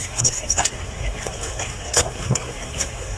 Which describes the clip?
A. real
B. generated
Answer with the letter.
B